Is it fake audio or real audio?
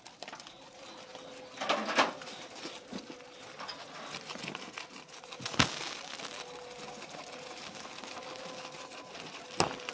real